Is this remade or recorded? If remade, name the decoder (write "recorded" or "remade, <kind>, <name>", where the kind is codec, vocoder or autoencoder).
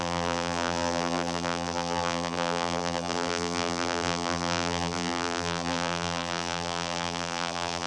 remade, vocoder, BigVGAN v2